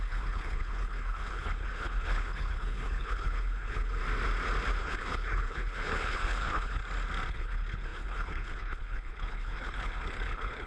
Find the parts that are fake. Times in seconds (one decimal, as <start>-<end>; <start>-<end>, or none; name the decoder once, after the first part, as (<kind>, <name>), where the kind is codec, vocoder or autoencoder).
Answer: 0.0-4.0 (codec, HILCodec); 4.8-6.8; 7.3-10.7